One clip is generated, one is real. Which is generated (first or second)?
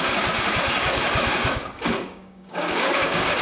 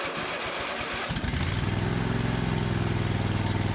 first